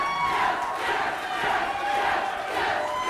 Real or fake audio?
real